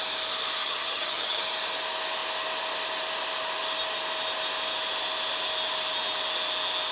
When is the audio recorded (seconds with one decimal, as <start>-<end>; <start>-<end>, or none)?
0.0-0.6; 1.4-6.9